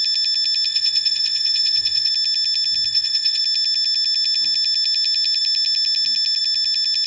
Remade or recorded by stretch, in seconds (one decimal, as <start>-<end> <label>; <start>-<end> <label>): 0.0-0.7 recorded; 0.7-2.1 remade; 2.1-2.9 recorded; 2.9-3.4 remade; 3.4-7.1 recorded